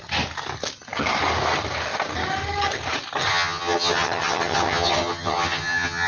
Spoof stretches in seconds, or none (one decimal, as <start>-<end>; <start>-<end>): 3.3-6.1